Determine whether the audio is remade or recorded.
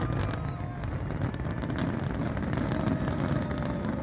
recorded